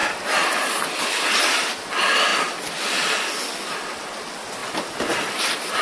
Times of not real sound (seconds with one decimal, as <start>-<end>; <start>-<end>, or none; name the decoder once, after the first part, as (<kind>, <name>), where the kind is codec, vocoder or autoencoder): 2.3-3.2 (vocoder, BigVGAN v2)